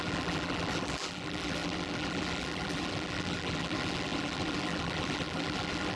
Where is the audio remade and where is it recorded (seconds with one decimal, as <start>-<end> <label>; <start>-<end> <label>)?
0.0-6.0 remade